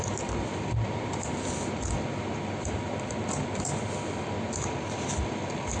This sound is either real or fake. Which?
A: real